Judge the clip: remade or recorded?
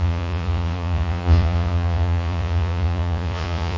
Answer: remade